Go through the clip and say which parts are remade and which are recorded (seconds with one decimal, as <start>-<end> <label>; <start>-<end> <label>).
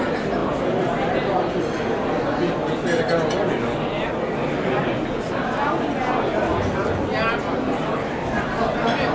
0.0-0.4 recorded; 0.4-1.6 remade; 1.6-9.1 recorded